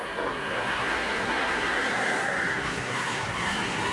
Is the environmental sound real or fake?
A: fake